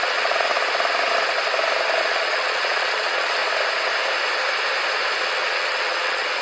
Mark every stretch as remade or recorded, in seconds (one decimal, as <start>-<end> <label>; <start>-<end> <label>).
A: 0.0-0.5 remade; 0.5-2.0 recorded; 2.0-3.4 remade; 3.4-5.2 recorded; 5.2-6.4 remade